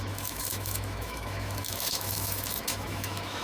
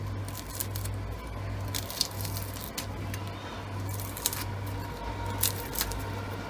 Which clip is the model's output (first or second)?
first